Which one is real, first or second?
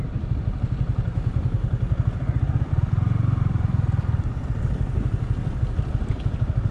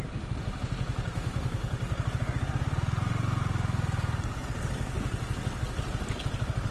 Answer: second